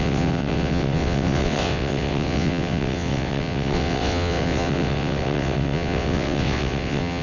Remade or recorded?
remade